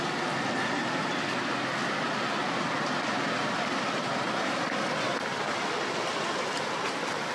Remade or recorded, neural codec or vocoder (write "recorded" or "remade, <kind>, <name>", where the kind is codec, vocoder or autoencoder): recorded